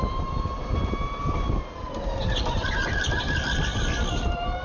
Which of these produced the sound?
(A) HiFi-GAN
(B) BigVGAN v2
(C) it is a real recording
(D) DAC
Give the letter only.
C